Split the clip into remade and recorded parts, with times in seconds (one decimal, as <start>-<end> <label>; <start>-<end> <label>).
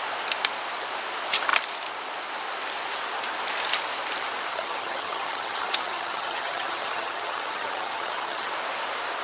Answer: 0.0-4.5 recorded; 4.5-8.5 remade; 8.5-9.2 recorded